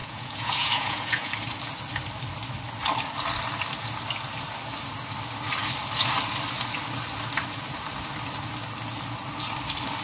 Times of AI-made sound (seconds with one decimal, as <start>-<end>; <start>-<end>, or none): 0.0-1.3